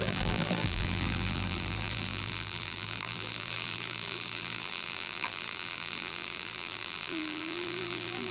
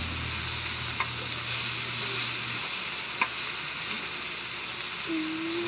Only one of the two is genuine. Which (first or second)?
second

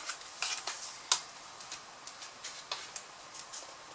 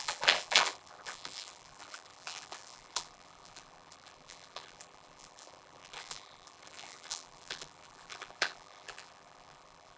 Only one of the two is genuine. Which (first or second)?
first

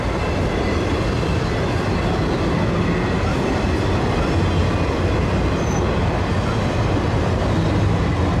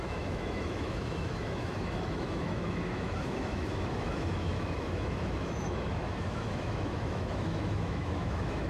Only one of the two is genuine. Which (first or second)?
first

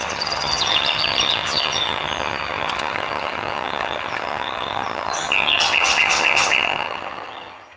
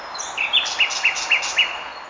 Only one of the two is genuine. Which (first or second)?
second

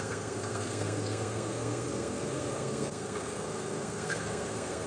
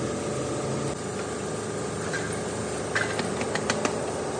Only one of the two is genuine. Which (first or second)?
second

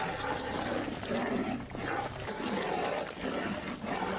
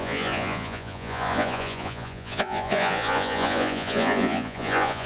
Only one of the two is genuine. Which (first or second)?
first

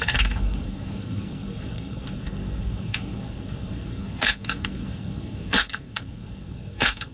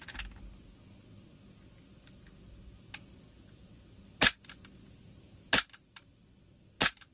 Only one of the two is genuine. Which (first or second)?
second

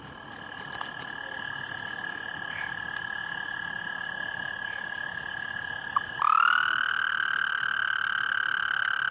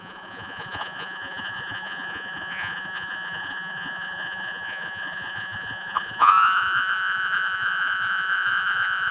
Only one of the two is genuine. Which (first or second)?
first